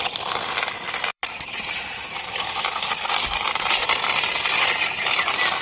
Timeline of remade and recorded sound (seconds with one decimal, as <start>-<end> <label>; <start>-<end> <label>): 0.0-1.1 recorded; 1.1-3.7 remade; 3.7-5.6 recorded